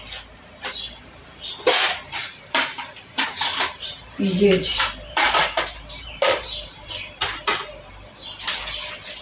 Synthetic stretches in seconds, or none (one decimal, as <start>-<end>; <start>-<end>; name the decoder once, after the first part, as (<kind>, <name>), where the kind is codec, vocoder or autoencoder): 1.0-1.7 (vocoder, BigVGAN v2); 2.2-6.9